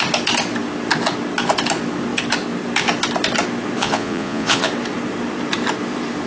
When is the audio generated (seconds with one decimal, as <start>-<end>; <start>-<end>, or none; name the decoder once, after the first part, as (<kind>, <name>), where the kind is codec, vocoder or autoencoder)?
3.8-4.7 (vocoder, Vocos)